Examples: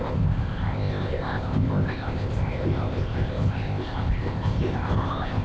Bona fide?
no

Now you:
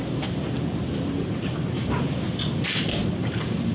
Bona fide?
yes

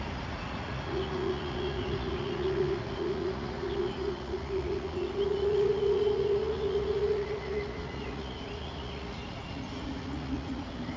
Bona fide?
no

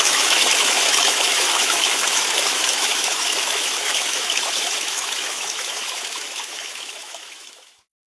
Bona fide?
no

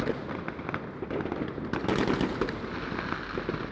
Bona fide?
yes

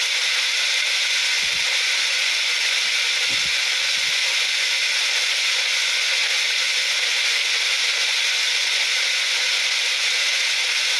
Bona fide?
no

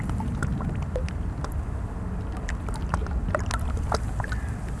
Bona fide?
yes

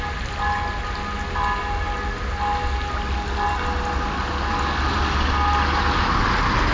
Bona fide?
yes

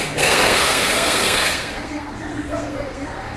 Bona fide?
no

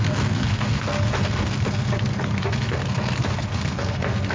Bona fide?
no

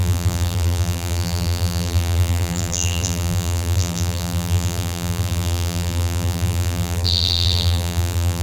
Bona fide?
no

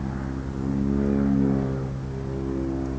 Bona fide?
yes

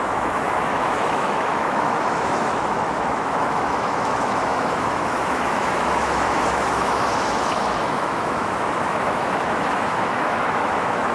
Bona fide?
no